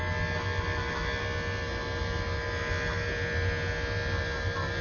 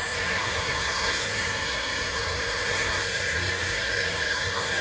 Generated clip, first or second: second